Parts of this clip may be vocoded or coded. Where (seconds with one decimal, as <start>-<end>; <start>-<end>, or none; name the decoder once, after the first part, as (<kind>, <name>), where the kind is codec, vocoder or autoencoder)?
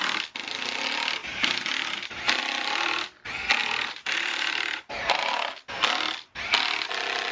1.2-2.4 (vocoder, BigVGAN v2); 3.6-5.5